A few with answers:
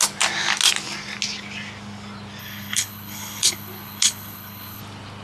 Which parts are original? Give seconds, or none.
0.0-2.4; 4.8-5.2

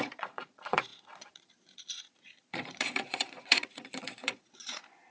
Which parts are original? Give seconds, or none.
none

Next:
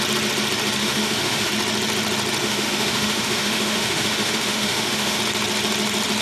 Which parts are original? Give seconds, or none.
0.0-0.8; 1.5-2.4; 5.2-6.2

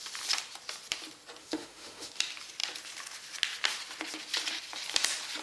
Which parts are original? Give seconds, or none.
0.0-1.4; 2.1-5.4

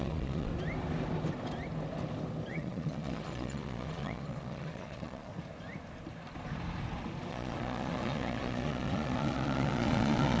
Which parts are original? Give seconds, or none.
0.5-2.5; 5.3-7.3

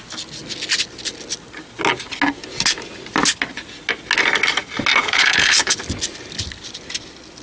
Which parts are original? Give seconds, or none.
0.0-5.0; 5.8-7.4

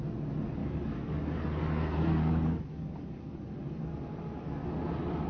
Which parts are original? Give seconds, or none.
0.0-0.6; 3.8-5.3